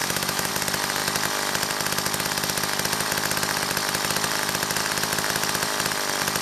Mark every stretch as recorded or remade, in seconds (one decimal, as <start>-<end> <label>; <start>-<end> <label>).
0.0-0.5 remade; 0.5-6.4 recorded

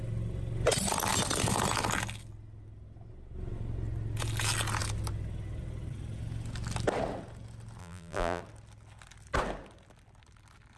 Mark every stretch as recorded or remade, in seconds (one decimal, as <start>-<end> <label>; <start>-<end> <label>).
0.0-7.8 recorded; 7.8-8.4 remade; 8.4-10.8 recorded

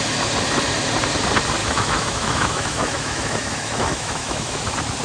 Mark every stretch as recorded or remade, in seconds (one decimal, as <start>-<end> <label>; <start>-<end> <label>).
0.0-1.6 recorded; 1.6-4.6 remade; 4.6-5.0 recorded

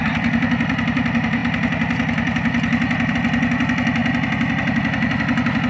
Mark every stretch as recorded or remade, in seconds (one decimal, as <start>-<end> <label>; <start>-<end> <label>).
0.0-4.0 remade; 4.0-5.7 recorded

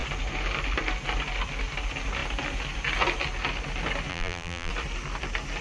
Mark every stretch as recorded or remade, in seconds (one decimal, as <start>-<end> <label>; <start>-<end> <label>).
0.0-4.1 recorded; 4.1-4.7 remade; 4.7-5.6 recorded

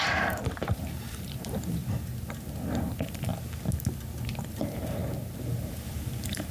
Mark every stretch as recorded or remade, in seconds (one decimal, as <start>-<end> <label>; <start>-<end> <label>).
0.0-1.8 remade; 1.8-2.8 recorded; 2.8-3.3 remade; 3.3-4.5 recorded; 4.5-5.0 remade; 5.0-5.5 recorded; 5.5-6.5 remade

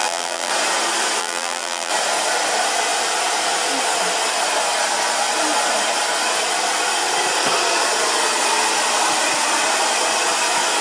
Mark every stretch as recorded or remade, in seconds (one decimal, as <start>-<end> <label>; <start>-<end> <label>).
0.0-0.5 remade; 0.5-1.2 recorded; 1.2-1.9 remade; 1.9-10.8 recorded